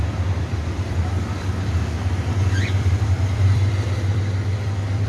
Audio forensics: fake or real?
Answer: fake